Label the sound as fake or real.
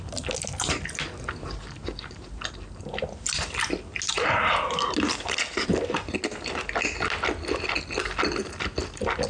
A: real